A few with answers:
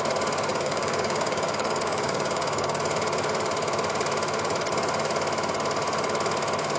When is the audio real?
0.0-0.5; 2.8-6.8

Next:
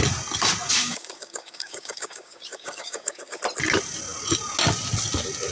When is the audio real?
0.0-0.8; 3.4-5.5

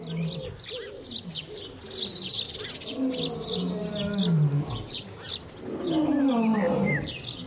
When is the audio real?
0.0-7.5